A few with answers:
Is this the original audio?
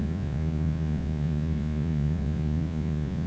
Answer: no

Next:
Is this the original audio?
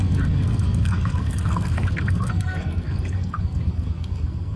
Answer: no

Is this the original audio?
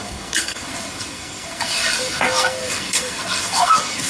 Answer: no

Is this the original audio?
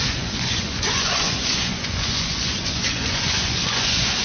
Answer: no